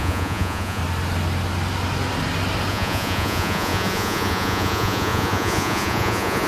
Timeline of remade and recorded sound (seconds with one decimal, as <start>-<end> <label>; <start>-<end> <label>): 0.0-0.8 remade; 0.8-2.7 recorded; 2.7-6.5 remade